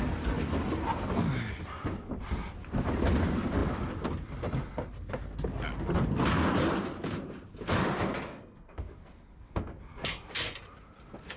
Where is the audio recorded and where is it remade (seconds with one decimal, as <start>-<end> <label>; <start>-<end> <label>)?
0.0-8.3 recorded; 8.3-9.8 remade; 9.8-11.4 recorded